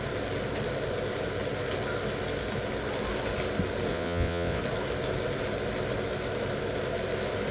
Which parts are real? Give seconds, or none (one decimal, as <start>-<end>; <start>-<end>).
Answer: 0.0-3.9; 4.6-7.5

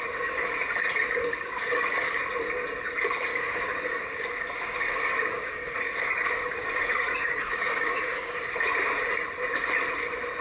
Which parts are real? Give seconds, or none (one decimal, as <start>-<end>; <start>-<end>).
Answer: 0.0-1.2; 2.1-3.3; 8.3-10.4

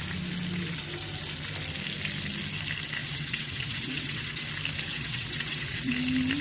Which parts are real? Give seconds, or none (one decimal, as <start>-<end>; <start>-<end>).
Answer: 0.0-3.0; 4.5-4.9; 5.9-6.4

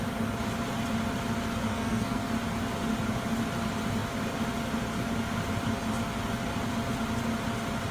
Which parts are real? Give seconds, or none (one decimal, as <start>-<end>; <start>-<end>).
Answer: 0.0-1.7; 2.3-7.9

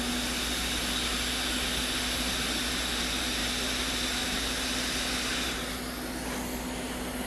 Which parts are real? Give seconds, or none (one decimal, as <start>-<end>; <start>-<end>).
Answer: 0.0-7.3

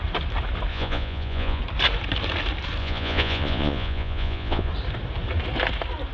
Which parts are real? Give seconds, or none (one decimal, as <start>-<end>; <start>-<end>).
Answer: 0.0-0.7; 1.6-2.8; 4.7-6.1